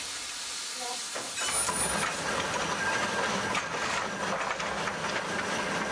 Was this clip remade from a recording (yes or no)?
no